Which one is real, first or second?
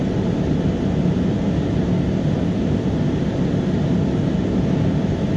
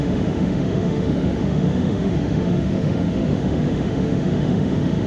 first